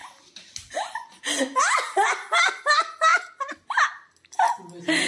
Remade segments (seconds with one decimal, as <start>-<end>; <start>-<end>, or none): none